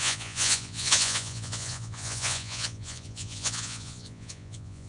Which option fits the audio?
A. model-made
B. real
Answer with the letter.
A